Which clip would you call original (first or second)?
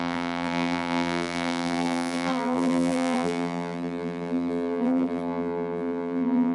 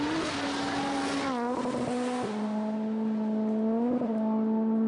second